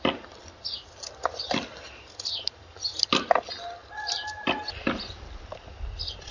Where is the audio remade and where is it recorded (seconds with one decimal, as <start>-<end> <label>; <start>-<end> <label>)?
0.0-3.8 recorded; 3.8-5.1 remade; 5.1-6.3 recorded